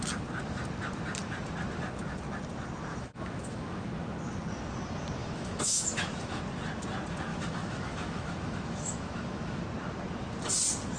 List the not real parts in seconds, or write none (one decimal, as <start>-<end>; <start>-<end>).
2.9-3.9; 5.2-6.4; 7.3-9.6